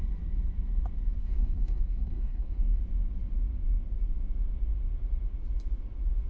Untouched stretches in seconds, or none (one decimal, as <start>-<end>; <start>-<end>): 0.0-1.2; 2.8-6.3